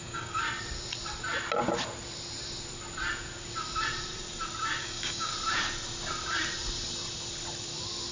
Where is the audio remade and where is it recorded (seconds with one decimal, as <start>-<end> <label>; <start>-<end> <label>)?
0.0-0.4 remade; 0.4-4.8 recorded; 4.8-5.3 remade; 5.3-8.1 recorded